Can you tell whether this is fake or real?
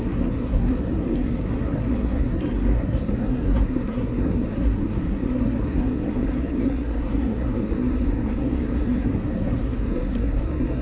fake